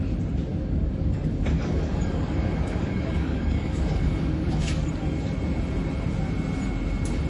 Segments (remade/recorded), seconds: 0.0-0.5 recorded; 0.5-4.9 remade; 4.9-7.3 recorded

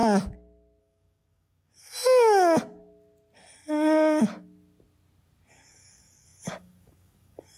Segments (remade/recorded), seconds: 0.0-0.8 recorded; 0.8-1.8 remade; 1.8-5.5 recorded; 5.5-7.6 remade

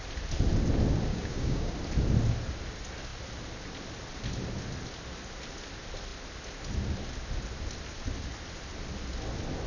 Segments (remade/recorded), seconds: 0.0-1.1 recorded; 1.1-1.7 remade; 1.7-9.7 recorded